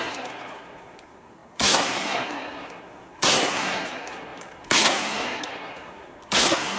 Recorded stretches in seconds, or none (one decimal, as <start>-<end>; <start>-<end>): none